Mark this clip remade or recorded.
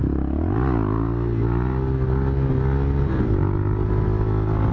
recorded